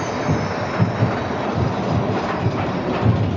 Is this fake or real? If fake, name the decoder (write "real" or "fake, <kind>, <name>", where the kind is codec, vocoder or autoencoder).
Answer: real